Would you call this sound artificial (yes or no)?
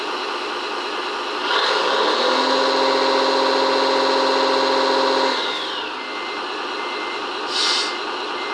no